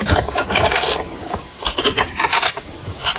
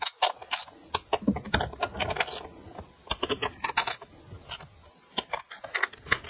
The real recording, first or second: second